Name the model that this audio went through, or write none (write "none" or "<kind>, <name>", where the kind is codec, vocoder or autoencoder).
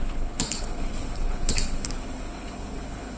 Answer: codec, HILCodec